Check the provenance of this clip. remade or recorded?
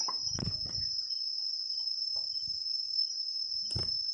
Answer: remade